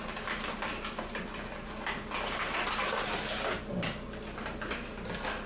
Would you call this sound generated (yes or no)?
no